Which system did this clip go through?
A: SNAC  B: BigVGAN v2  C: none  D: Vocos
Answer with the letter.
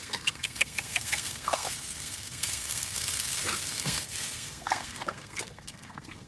A